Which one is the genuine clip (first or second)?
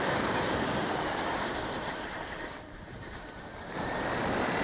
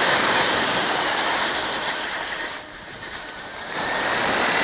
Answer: second